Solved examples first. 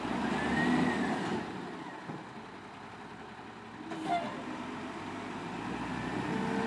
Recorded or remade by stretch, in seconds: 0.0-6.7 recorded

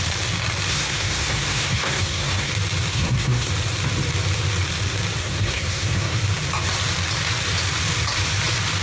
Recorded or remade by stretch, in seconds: 0.0-0.7 recorded; 0.7-2.5 remade; 2.5-2.9 recorded; 2.9-3.5 remade; 3.5-5.2 recorded; 5.2-6.2 remade; 6.2-8.8 recorded

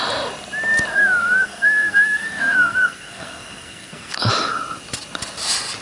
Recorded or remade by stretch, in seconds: 0.0-0.9 recorded; 0.9-4.3 remade; 4.3-5.8 recorded

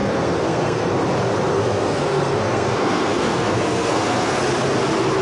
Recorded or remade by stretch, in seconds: 0.0-0.9 remade; 0.9-1.5 recorded; 1.5-4.4 remade; 4.4-5.2 recorded